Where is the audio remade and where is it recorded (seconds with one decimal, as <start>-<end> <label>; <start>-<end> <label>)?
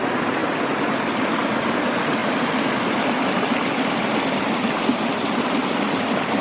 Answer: 0.0-6.4 recorded